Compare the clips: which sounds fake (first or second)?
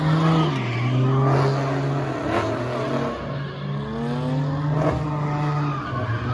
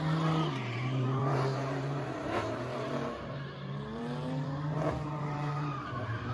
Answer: second